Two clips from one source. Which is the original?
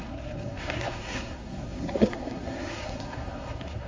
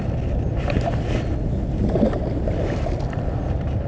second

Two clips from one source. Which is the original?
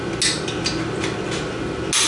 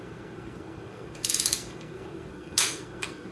first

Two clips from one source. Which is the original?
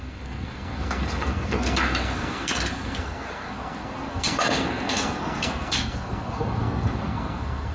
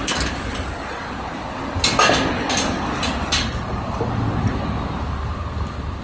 second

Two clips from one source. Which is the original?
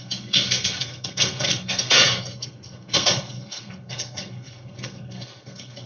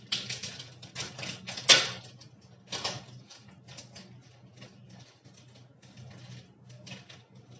second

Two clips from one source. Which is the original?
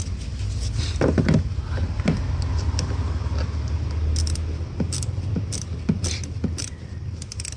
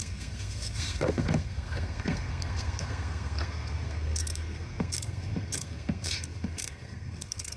first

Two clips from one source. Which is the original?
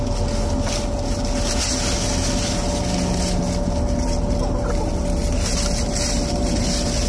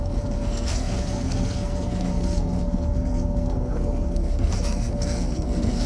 first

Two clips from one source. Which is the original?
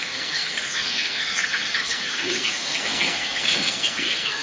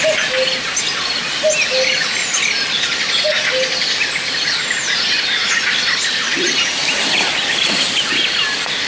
second